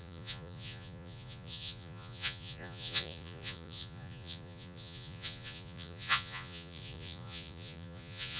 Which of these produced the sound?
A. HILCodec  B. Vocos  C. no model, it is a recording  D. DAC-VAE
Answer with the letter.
B